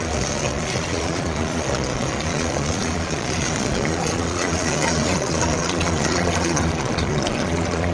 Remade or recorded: remade